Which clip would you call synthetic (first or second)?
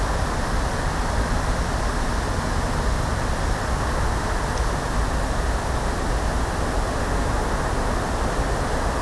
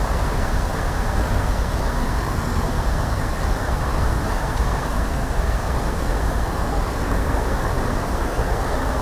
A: second